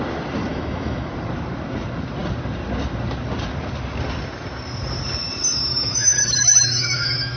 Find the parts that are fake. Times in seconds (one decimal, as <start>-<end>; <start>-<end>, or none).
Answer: 0.5-1.1; 5.7-7.4